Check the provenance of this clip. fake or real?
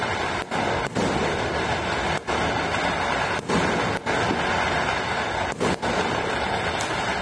real